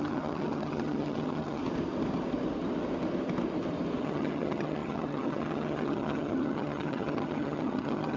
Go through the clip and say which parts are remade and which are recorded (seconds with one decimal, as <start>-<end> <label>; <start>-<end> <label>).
0.0-1.6 remade; 1.6-4.0 recorded; 4.0-8.2 remade